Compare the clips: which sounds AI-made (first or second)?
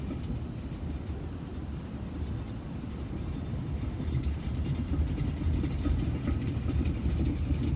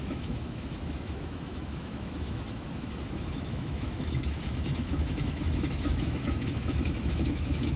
second